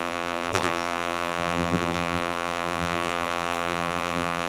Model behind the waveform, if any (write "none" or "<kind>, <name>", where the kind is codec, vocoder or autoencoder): vocoder, BigVGAN v2